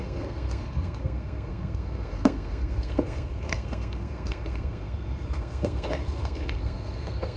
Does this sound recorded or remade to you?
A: remade